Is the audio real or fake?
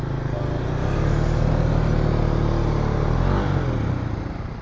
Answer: real